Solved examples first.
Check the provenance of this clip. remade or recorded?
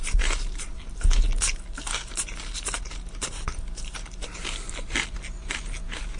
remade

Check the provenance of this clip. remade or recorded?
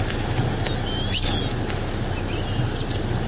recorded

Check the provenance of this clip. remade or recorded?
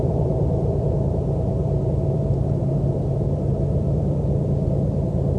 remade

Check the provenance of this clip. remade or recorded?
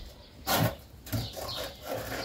recorded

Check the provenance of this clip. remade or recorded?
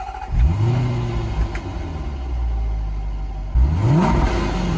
recorded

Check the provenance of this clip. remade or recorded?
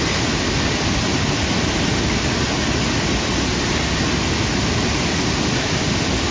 recorded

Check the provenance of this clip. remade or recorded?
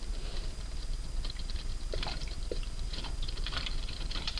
remade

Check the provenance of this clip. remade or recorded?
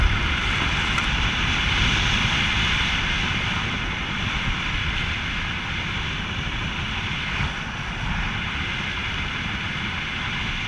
remade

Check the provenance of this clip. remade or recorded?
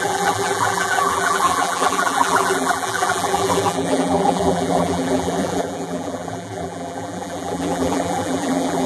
remade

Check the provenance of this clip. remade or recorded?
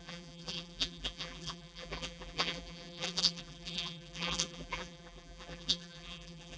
remade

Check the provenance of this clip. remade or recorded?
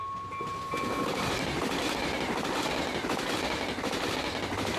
recorded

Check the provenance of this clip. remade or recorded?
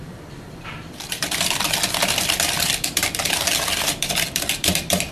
remade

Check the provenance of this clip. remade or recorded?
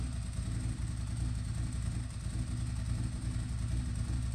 recorded